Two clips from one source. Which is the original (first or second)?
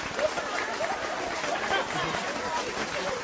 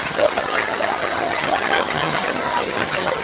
first